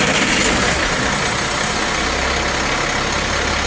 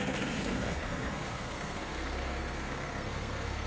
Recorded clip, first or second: first